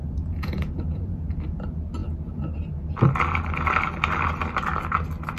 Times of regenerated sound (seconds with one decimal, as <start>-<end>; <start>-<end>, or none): 0.0-1.3